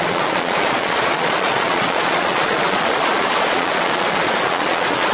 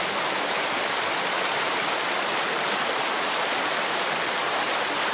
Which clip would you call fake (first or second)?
first